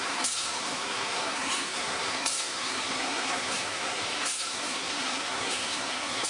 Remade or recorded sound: remade